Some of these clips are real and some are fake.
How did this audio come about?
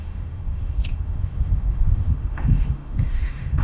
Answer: fake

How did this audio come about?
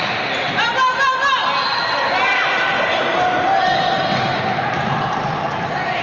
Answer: real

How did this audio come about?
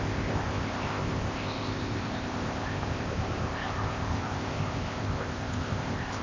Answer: fake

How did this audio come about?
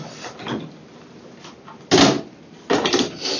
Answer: real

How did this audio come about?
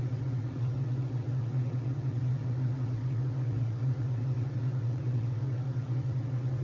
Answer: fake